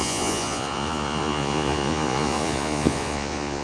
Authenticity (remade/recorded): remade